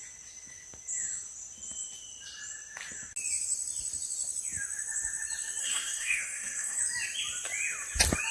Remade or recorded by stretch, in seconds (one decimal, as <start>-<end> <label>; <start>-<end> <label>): 0.0-5.6 recorded; 5.6-6.8 remade; 6.8-8.3 recorded